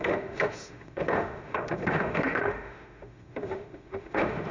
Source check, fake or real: fake